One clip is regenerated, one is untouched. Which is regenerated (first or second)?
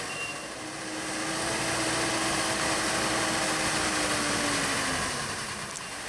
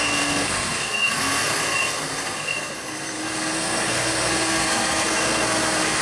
second